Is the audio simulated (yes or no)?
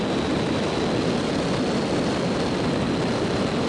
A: no